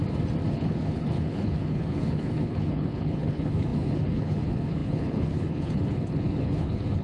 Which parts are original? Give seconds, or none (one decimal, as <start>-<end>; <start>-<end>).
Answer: 0.0-0.5

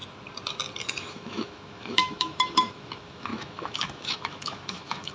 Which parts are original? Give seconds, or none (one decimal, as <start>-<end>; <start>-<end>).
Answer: 0.0-1.0